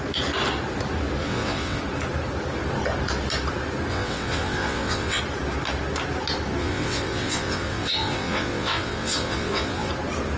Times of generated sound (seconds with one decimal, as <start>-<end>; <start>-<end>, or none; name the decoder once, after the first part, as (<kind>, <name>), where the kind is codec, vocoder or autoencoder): 1.2-1.8 (vocoder, WaveNeXt); 3.9-5.2; 6.6-9.9